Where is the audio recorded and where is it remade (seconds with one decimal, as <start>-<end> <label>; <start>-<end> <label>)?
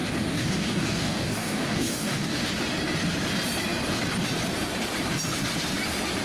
0.0-2.4 remade; 2.4-6.2 recorded